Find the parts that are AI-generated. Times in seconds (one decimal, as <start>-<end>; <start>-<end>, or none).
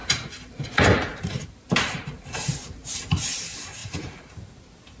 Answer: 0.0-0.6; 1.1-2.5; 3.8-4.5